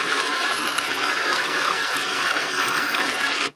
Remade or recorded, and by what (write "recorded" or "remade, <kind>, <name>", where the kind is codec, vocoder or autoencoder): remade, codec, SNAC